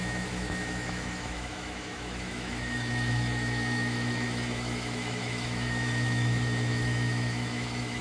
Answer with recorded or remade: remade